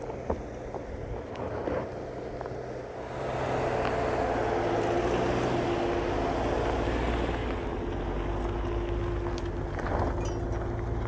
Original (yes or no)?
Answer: yes